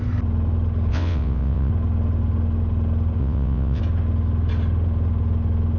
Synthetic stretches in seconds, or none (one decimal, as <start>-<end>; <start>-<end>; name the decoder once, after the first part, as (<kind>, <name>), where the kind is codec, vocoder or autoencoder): 0.9-1.7 (vocoder, WaveNeXt); 3.2-3.8